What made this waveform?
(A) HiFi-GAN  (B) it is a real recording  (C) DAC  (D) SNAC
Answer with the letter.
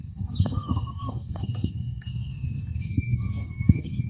D